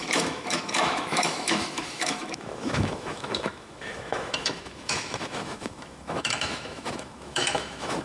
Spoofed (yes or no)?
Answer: yes